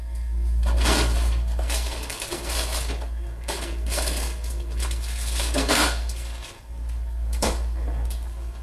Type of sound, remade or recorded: remade